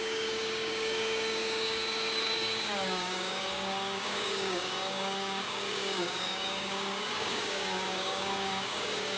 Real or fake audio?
fake